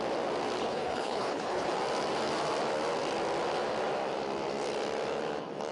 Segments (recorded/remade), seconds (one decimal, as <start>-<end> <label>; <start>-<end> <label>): 0.0-0.6 recorded; 0.6-1.7 remade; 1.7-5.7 recorded